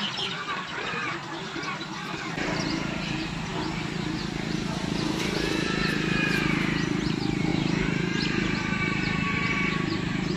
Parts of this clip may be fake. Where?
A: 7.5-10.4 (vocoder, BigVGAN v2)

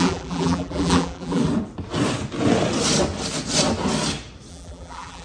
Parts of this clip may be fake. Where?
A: 0.0-1.4 (vocoder, BigVGAN v2); 4.5-5.2

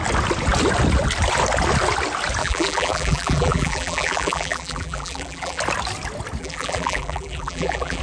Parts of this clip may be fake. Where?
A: 2.4-5.6 (vocoder, BigVGAN v2); 6.4-8.0

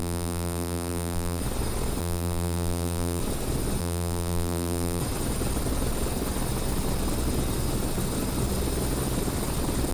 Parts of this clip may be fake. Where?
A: 0.0-1.4 (vocoder, BigVGAN v2); 2.0-3.2; 3.8-5.0

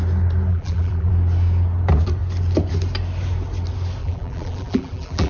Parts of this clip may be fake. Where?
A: 0.5-1.1 (vocoder, BigVGAN v2); 4.0-5.3

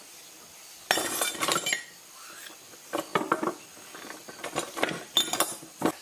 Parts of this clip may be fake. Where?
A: none

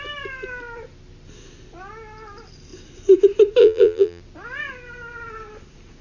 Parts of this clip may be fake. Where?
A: 3.6-4.2 (vocoder, BigVGAN v2)

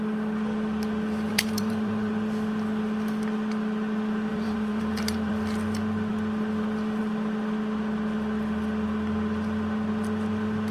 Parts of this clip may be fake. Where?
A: 1.3-2.1 (vocoder, BigVGAN v2); 4.3-5.3